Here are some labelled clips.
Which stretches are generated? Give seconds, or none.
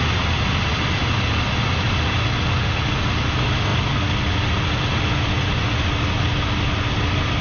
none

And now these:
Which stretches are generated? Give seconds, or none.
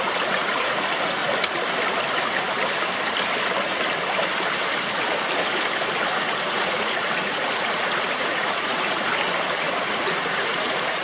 0.0-1.2 (vocoder, Vocos); 6.2-9.1; 9.9-11.0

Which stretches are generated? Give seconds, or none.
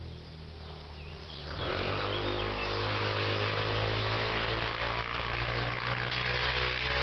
1.1-1.7 (vocoder, Vocos)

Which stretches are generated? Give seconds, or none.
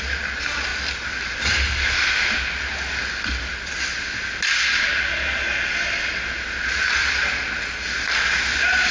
none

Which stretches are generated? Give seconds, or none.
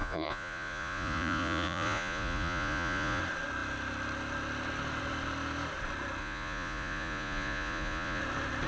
0.0-3.2 (vocoder, Vocos); 6.2-8.2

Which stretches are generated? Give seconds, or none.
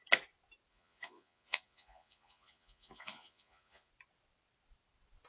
0.7-3.9 (vocoder, Vocos)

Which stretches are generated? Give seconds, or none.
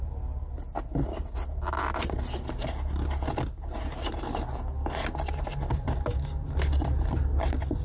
none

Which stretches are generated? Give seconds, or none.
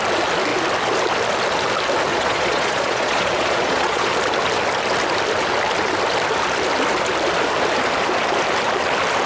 2.1-4.1 (vocoder, Vocos)